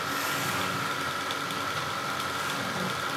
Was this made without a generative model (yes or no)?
yes